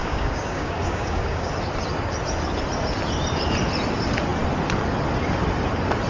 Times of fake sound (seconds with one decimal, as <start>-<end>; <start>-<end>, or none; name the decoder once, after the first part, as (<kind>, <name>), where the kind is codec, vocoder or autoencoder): 0.0-1.5 (codec, DAC)